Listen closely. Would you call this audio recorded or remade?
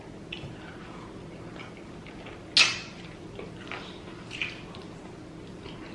recorded